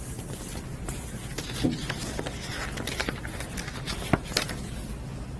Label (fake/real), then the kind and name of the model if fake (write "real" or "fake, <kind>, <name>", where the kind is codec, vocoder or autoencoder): real